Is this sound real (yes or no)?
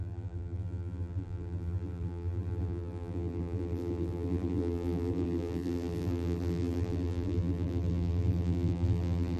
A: no